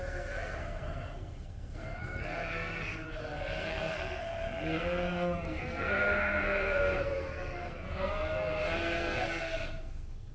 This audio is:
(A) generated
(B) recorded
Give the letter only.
A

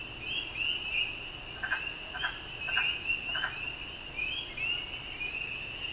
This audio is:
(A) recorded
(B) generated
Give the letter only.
A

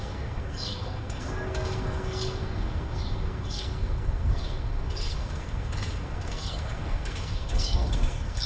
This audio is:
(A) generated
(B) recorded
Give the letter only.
A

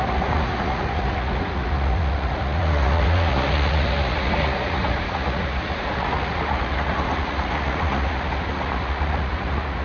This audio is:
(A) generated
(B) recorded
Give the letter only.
A